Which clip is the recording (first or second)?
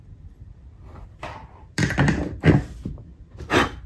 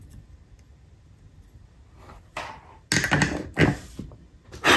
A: second